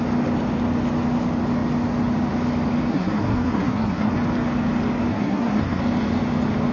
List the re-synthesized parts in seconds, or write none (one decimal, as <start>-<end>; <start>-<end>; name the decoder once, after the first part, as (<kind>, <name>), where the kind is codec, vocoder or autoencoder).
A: 2.9-4.1 (codec, SNAC); 5.1-5.8

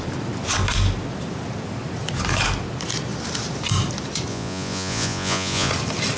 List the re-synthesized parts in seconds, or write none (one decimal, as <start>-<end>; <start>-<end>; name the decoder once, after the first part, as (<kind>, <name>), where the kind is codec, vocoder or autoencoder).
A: 4.3-5.7 (vocoder, Vocos)

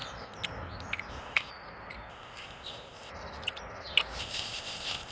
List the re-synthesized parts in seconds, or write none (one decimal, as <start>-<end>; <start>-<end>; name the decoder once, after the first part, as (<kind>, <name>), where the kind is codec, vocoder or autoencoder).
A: 1.1-1.5 (codec, ZipCodec); 2.1-3.1; 4.2-5.1

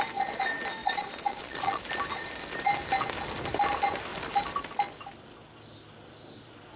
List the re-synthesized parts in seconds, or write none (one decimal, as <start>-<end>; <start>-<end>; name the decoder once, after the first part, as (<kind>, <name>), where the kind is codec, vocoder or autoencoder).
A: 0.8-1.8 (vocoder, Vocos)